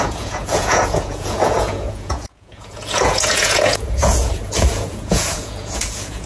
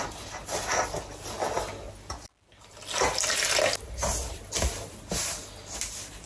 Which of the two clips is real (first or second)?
second